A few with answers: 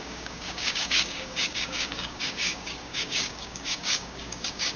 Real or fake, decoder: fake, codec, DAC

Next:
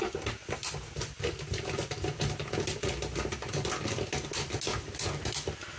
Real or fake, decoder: real